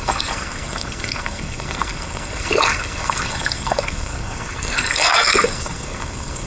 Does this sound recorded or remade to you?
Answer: remade